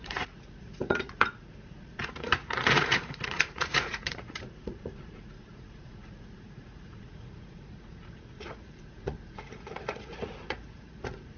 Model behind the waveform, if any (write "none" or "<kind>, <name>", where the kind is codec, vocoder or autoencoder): vocoder, Vocos